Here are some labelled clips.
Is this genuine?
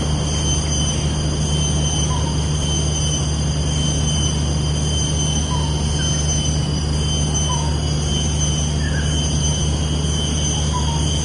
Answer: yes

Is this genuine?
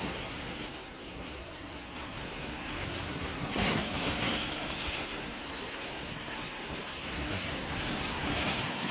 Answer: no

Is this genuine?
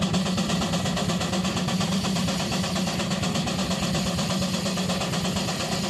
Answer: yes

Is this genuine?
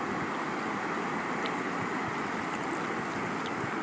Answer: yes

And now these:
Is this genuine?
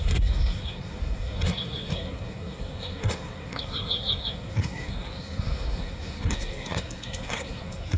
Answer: no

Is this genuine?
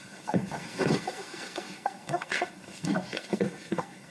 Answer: no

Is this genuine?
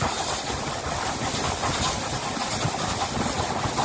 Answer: yes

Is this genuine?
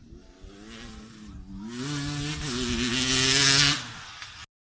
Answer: yes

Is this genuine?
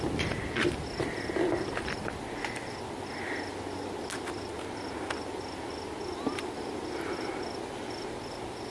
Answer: yes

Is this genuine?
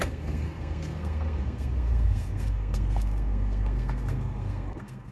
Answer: no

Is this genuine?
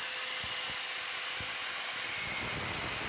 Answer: yes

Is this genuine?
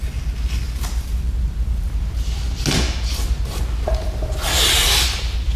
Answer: yes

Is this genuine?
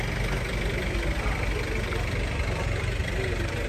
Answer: yes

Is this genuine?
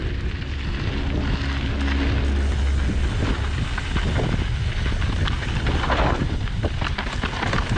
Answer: yes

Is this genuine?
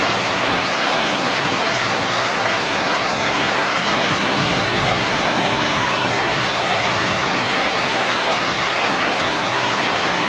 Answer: no